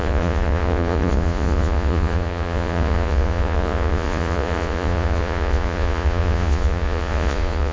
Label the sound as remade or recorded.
remade